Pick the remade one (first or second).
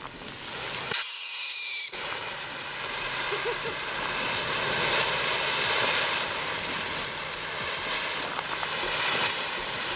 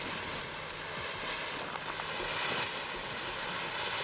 first